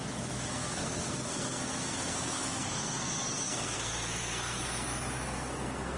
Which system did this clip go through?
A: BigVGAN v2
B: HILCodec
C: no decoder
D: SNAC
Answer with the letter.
D